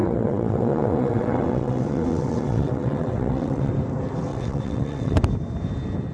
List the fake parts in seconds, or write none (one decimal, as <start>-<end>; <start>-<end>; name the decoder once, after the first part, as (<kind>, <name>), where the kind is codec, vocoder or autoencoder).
0.0-3.7 (vocoder, WaveNeXt); 4.3-5.2